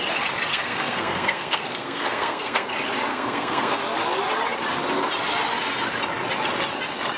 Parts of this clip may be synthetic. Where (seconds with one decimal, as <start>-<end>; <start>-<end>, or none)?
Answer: 0.5-2.7; 3.1-3.8